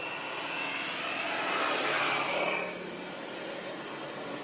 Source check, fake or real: real